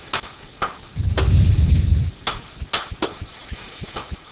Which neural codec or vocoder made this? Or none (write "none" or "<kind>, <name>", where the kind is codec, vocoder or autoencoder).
none